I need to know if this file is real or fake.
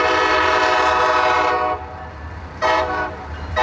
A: fake